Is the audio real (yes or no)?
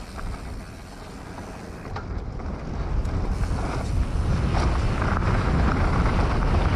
yes